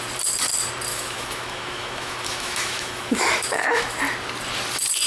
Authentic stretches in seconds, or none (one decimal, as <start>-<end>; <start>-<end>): 0.0-0.9; 4.0-5.1